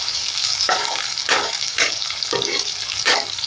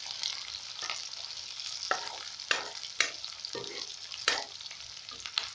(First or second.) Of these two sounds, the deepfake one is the first